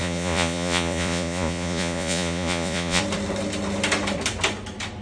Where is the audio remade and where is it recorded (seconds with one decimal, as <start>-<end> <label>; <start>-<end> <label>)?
0.0-3.0 remade; 3.0-5.0 recorded